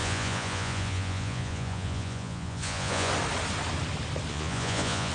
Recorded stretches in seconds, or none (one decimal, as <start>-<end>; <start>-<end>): 3.1-4.3